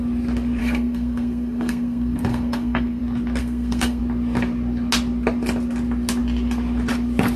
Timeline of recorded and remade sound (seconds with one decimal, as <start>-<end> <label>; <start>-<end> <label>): 0.0-0.6 recorded; 0.6-3.0 remade; 3.0-3.4 recorded; 3.4-4.0 remade; 4.0-7.4 recorded